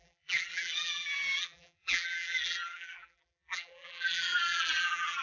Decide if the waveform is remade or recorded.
remade